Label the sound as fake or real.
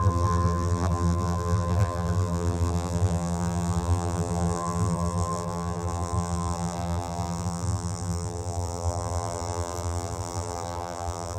fake